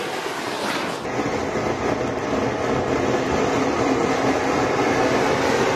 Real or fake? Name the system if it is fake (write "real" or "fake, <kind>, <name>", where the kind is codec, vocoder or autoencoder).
real